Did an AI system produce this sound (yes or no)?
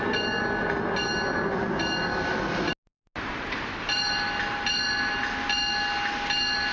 no